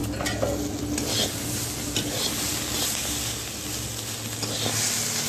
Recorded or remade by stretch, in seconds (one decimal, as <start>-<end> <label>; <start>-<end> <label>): 0.0-5.3 recorded